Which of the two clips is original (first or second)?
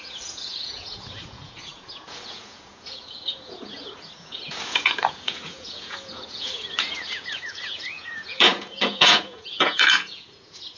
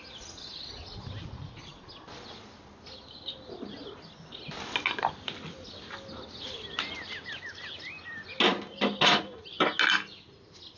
second